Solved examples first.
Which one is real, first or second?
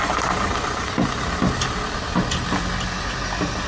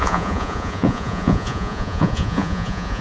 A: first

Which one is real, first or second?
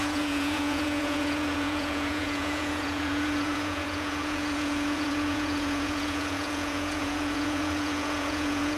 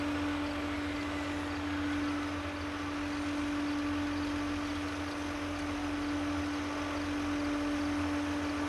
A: second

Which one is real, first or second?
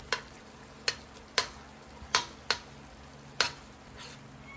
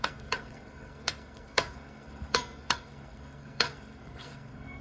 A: first